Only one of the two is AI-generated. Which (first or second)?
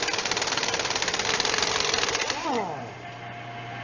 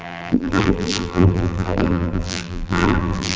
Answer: second